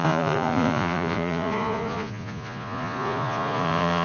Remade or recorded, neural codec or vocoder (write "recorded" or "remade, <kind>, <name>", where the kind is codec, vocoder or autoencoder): remade, vocoder, Vocos